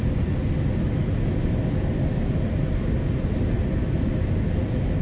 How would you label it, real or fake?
real